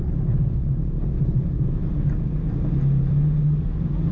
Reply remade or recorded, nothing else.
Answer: recorded